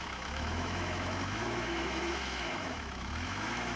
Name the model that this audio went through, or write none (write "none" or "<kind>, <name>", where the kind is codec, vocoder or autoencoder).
autoencoder, DAC-VAE